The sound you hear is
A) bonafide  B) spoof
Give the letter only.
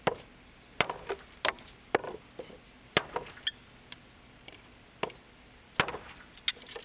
A